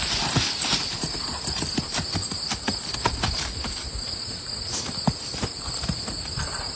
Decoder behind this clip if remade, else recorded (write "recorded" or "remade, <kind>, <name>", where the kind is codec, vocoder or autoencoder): recorded